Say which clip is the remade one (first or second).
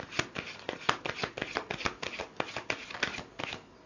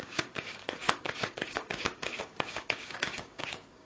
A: second